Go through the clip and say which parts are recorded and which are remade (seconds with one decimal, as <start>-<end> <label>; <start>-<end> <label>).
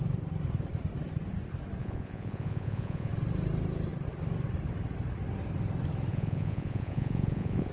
0.0-1.8 recorded; 1.8-3.1 remade; 3.1-6.1 recorded; 6.1-7.7 remade